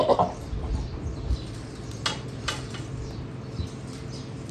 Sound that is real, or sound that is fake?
real